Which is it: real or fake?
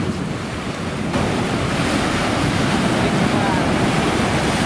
fake